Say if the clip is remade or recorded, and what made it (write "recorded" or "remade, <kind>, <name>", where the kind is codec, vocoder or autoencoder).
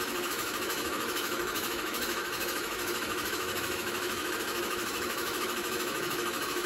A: remade, autoencoder, DAC-VAE